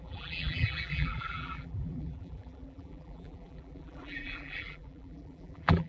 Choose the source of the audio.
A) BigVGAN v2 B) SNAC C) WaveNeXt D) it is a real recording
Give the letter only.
A